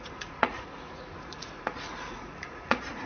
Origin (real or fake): fake